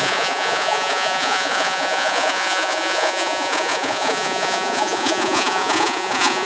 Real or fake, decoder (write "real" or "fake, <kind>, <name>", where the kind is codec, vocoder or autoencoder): fake, vocoder, Vocos